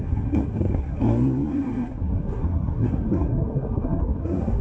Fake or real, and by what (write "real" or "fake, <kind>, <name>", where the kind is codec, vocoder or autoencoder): fake, codec, SNAC